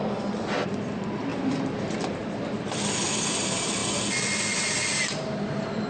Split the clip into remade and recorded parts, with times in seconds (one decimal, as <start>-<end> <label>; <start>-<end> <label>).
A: 0.0-1.3 remade; 1.3-1.8 recorded; 1.8-2.2 remade; 2.2-3.0 recorded; 3.0-3.8 remade; 3.8-4.6 recorded; 4.6-5.9 remade